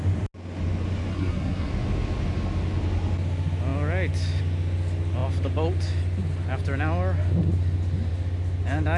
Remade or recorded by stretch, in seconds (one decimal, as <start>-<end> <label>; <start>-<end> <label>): 0.0-1.1 recorded; 1.1-1.7 remade; 1.7-9.0 recorded